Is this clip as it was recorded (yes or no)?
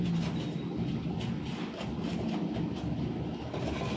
yes